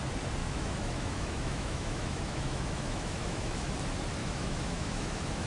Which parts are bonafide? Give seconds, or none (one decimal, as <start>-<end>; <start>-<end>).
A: 0.0-0.4; 3.7-4.2